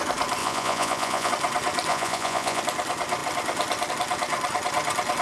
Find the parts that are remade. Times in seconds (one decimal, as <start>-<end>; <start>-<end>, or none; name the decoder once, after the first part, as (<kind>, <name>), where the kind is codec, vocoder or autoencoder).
0.4-1.3 (vocoder, Vocos); 1.9-2.6